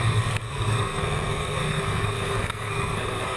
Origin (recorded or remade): remade